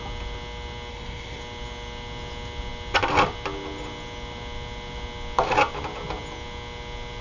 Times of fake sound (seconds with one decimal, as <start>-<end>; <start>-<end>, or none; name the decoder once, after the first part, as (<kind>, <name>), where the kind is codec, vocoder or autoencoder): 0.9-1.4 (codec, HILCodec)